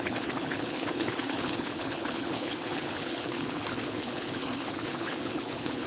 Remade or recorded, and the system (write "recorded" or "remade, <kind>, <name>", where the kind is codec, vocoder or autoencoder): remade, codec, HILCodec